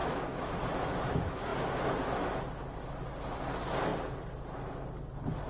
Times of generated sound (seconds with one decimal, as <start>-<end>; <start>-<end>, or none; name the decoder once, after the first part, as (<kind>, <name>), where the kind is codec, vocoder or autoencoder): 0.0-0.6 (autoencoder, DAC-VAE)